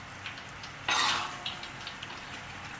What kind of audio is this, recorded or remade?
remade